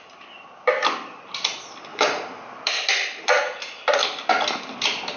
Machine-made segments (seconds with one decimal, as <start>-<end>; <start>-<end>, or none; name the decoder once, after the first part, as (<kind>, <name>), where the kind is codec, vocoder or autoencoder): 1.9-2.8 (vocoder, BigVGAN v2)